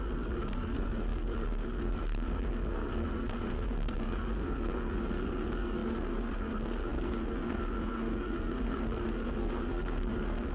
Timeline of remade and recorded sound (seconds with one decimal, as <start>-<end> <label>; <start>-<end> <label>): 0.0-10.5 remade